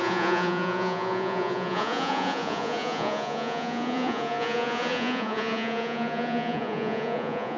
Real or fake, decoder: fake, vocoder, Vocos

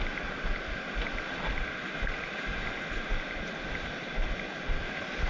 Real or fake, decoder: real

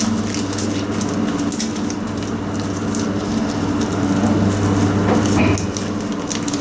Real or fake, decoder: real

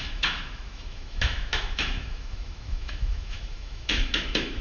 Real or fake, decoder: fake, autoencoder, DAC-VAE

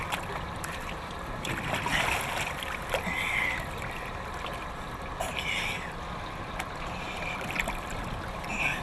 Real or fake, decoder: real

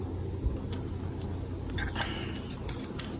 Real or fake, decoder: real